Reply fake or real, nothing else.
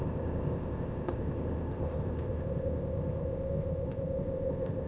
fake